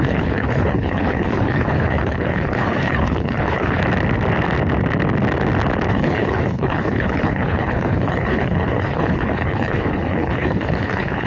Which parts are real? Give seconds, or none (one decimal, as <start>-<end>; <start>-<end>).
3.8-5.9